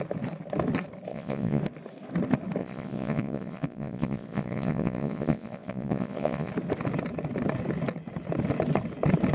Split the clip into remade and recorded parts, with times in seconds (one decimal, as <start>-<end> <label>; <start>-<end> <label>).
0.0-1.1 recorded; 1.1-1.6 remade; 1.6-2.6 recorded; 2.6-6.5 remade; 6.5-9.3 recorded